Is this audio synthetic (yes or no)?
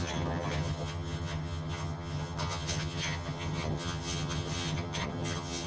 yes